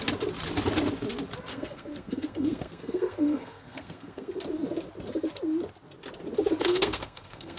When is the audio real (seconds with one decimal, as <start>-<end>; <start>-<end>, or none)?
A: 0.0-1.5; 4.3-6.6